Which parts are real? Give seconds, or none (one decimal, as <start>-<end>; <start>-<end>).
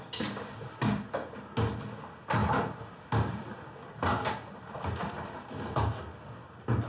0.0-6.9